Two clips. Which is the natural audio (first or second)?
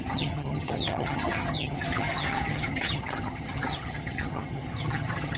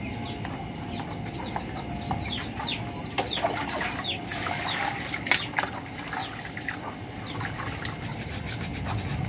second